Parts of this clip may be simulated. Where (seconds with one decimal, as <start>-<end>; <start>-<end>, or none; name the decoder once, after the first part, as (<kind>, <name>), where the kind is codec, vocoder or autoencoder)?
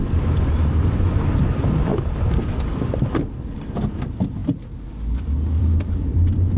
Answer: 0.0-1.9 (vocoder, BigVGAN v2); 2.5-6.6